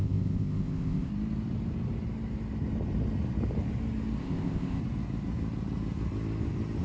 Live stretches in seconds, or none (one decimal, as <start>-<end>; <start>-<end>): 1.1-4.2; 4.8-6.8